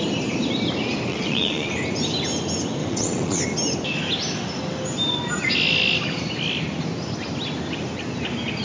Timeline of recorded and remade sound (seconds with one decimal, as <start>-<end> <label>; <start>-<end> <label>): 0.0-1.1 recorded; 1.1-1.7 remade; 1.7-2.8 recorded; 2.8-3.4 remade; 3.4-8.6 recorded